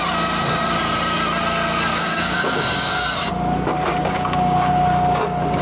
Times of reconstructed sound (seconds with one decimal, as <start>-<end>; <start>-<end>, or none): 1.9-3.3; 4.0-4.7